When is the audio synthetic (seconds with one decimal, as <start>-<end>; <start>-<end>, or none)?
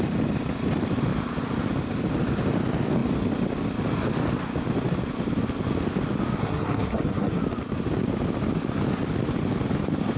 6.4-7.4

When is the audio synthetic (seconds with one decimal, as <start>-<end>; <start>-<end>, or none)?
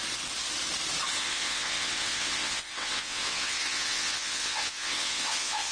1.1-5.7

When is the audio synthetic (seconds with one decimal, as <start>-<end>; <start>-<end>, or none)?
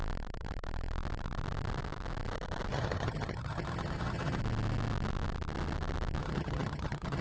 2.7-4.4; 6.2-7.2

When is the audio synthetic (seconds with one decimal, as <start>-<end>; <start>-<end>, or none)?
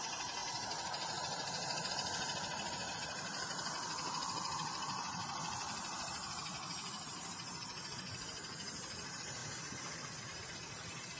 0.0-3.5; 4.5-5.2; 5.9-9.4; 10.2-11.2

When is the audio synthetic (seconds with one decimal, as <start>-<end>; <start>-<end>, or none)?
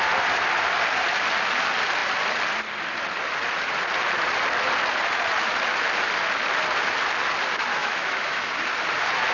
7.7-8.5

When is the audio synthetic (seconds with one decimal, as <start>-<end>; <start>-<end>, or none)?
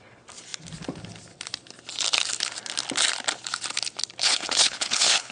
4.2-5.3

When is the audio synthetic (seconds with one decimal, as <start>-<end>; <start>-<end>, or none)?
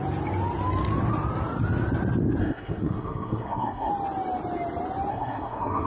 2.4-3.9; 5.1-5.9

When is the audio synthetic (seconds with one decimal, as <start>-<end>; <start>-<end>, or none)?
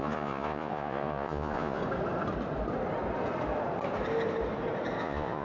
0.0-1.8; 5.0-5.4